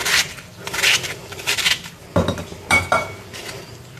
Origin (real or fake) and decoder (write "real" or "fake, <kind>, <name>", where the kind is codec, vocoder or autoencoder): fake, vocoder, BigVGAN v2